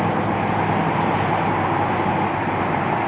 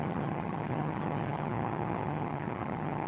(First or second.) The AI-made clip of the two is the second